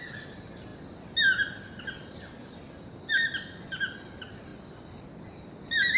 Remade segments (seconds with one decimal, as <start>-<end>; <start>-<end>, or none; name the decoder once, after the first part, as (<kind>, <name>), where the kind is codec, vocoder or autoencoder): none

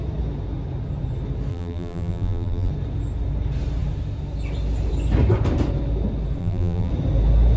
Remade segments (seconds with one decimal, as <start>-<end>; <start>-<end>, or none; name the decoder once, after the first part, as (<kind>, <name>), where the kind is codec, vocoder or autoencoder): 1.5-2.7 (vocoder, BigVGAN v2); 6.4-6.9

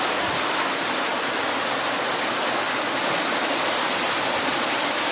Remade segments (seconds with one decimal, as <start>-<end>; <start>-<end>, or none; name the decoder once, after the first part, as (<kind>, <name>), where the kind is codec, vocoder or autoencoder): none